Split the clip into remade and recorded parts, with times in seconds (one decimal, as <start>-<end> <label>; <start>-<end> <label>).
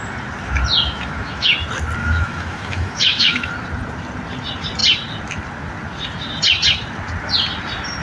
0.0-0.8 recorded; 0.8-1.5 remade; 1.5-2.0 recorded; 2.0-3.5 remade; 3.5-8.0 recorded